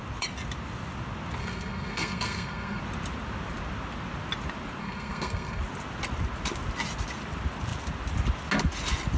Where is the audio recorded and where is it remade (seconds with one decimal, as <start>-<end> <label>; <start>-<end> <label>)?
0.0-1.4 recorded; 1.4-2.8 remade; 2.8-4.8 recorded; 4.8-5.6 remade; 5.6-9.2 recorded